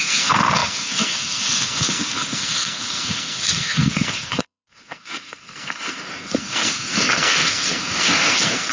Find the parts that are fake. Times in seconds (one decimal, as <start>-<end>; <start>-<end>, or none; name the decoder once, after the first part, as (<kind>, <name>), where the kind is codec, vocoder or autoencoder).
0.0-8.7 (codec, SNAC)

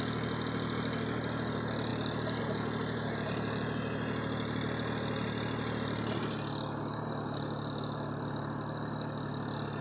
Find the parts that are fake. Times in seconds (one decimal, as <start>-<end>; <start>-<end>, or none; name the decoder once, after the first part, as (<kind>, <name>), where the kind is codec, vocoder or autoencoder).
none

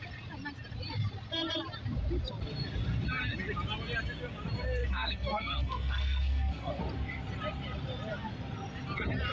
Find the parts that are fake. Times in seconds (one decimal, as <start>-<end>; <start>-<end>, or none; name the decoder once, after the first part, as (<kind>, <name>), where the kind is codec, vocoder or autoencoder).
4.8-6.8 (codec, SNAC)

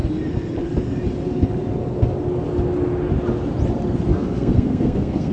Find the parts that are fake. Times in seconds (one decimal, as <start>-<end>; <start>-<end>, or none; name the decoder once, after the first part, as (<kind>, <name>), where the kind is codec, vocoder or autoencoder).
4.1-5.3 (codec, SNAC)

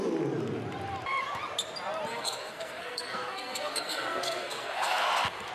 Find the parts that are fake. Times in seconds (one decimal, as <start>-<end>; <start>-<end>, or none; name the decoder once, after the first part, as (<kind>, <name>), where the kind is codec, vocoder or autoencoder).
2.1-5.5 (codec, SNAC)

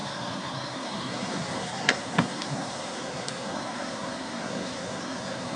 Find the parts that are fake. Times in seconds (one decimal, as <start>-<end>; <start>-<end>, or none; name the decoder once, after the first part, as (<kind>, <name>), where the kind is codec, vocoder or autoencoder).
0.0-5.6 (codec, SNAC)

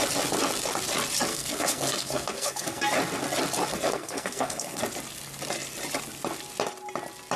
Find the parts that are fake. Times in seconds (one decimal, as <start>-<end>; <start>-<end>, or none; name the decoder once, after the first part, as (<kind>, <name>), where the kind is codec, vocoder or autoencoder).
1.3-2.9 (codec, SNAC); 3.7-4.8